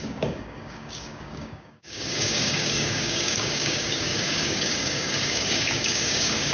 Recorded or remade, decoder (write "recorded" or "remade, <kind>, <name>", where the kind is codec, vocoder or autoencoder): remade, codec, DAC